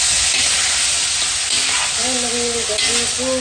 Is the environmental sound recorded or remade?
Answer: recorded